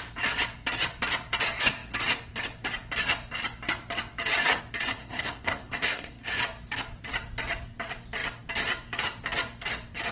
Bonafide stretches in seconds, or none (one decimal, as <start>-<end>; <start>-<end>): 0.0-5.0; 6.3-10.1